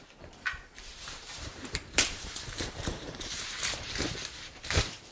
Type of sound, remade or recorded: remade